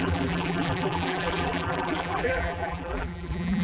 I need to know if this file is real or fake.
fake